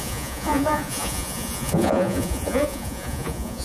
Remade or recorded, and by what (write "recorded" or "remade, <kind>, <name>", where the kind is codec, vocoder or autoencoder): remade, vocoder, Vocos